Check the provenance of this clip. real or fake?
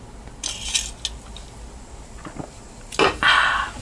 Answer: real